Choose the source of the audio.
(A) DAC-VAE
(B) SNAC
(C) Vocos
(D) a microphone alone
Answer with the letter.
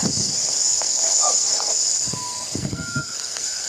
B